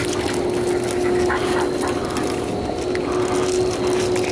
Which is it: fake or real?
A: real